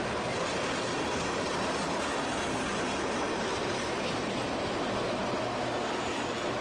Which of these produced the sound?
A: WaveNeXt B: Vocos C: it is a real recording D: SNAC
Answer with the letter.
C